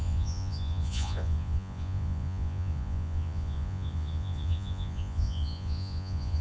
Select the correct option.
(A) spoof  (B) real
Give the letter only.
A